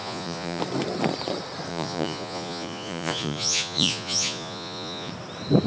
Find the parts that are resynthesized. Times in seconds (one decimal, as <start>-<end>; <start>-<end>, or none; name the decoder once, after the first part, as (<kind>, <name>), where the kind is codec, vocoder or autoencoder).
0.0-0.6 (vocoder, Vocos); 1.7-5.1